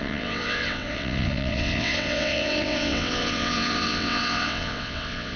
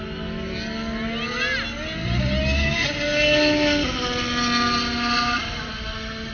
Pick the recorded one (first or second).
second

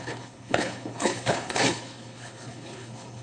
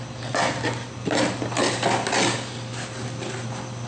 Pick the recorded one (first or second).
second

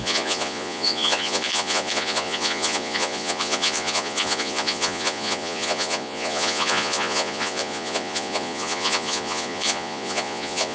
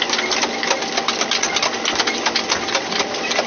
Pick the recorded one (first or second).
second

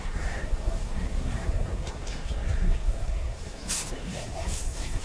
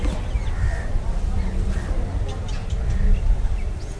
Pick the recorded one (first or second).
second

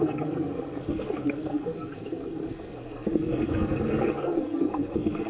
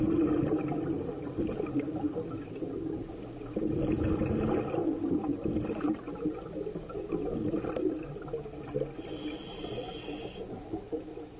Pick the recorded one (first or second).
second